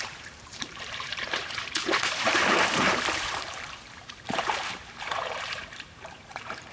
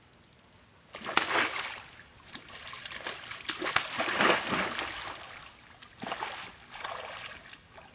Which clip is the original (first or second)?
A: second